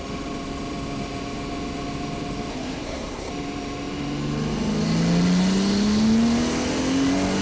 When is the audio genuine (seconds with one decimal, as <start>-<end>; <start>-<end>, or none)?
0.0-2.5; 3.3-7.4